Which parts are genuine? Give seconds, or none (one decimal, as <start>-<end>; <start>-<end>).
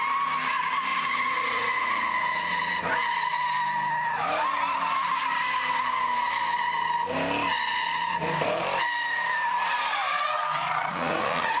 0.0-0.9; 2.9-7.7; 8.2-10.7